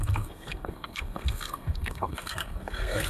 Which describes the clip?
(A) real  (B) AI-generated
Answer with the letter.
B